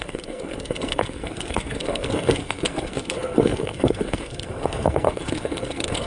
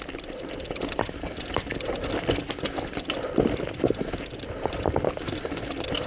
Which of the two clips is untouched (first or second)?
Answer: second